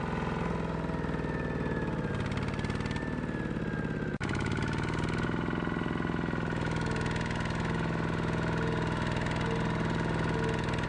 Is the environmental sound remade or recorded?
recorded